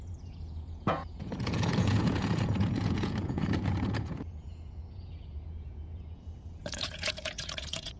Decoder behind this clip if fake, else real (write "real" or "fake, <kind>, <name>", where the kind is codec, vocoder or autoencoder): fake, vocoder, Vocos